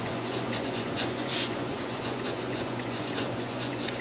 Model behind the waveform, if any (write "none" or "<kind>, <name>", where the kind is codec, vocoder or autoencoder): vocoder, Vocos